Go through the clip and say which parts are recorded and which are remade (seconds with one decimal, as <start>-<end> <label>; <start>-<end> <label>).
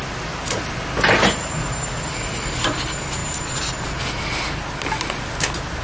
0.0-5.8 recorded